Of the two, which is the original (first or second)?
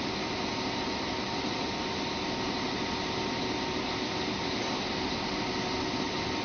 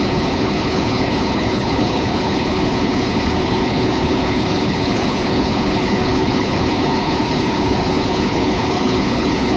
first